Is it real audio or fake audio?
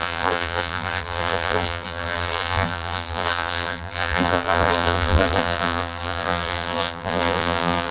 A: fake